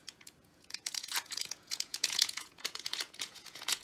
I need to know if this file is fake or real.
fake